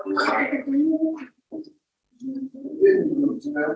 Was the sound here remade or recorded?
recorded